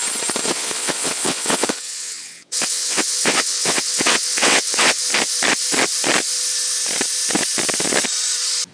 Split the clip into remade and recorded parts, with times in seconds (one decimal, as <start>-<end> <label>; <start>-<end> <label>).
0.0-0.5 recorded; 0.5-5.0 remade; 5.0-8.7 recorded